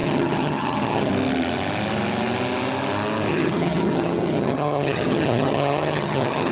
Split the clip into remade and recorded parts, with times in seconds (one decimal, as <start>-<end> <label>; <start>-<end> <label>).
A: 0.0-1.1 remade; 1.1-3.3 recorded; 3.3-6.5 remade